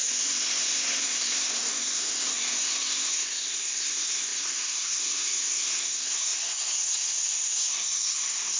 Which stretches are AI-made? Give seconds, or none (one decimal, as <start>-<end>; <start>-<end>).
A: 0.0-8.6